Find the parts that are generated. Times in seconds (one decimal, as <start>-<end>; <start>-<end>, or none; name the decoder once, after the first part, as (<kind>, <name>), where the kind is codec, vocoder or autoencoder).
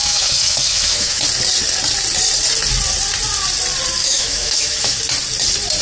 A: 0.0-1.2 (autoencoder, DAC-VAE); 4.0-5.0